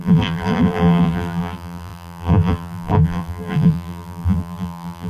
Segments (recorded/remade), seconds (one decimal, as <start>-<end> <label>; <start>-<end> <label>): 0.0-5.1 remade